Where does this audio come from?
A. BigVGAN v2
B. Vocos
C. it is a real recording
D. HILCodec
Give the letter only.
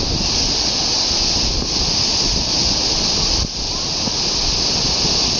C